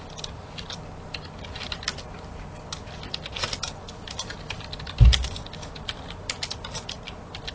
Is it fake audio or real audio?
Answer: real